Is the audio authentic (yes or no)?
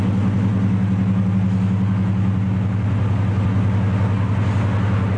yes